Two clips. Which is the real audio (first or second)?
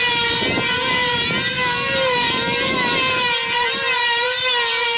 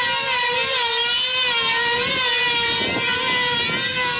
second